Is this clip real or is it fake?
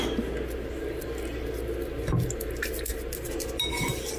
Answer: real